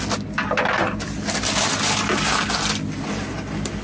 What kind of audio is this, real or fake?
real